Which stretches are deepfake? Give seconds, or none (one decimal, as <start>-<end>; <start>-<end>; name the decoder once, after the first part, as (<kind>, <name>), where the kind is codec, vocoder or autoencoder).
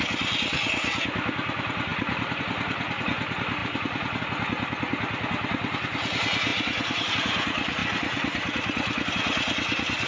1.9-2.4 (vocoder, BigVGAN v2); 3.6-4.2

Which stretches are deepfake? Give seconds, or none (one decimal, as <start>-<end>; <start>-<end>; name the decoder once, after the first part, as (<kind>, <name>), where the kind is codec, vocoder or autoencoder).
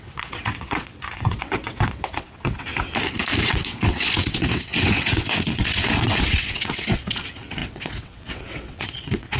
0.0-2.7 (vocoder, WaveNeXt); 3.4-9.4